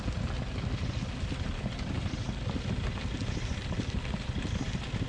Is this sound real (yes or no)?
yes